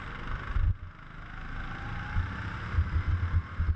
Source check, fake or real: real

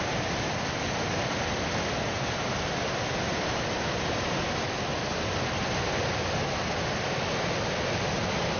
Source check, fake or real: real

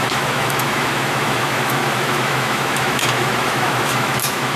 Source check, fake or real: fake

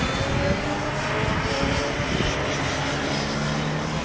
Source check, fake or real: real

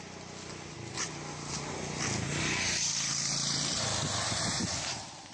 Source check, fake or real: real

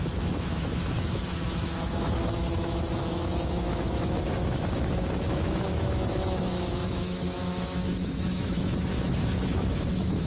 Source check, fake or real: fake